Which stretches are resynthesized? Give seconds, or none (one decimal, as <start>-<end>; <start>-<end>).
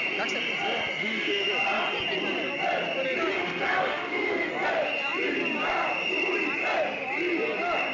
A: 1.0-1.5; 3.3-4.5